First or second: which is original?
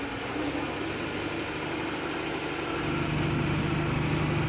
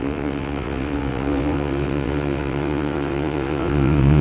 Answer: first